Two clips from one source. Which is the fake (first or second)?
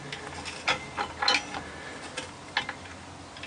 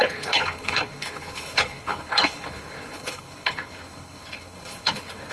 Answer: second